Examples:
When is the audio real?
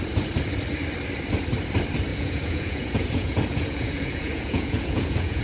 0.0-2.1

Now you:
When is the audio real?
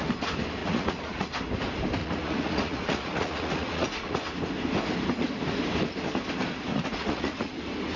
0.0-0.6; 1.3-2.0; 4.2-6.7; 7.5-8.0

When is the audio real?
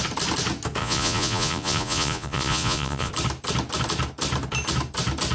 0.0-0.8; 3.1-5.3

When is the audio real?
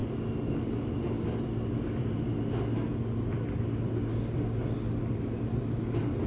0.0-6.3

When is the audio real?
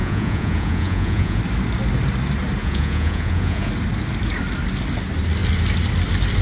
1.4-2.6; 3.7-6.4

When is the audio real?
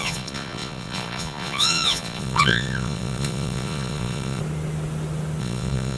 4.4-5.4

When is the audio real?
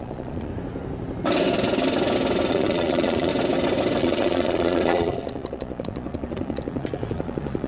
0.5-2.5; 3.3-4.0